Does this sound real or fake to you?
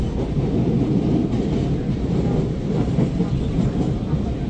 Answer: real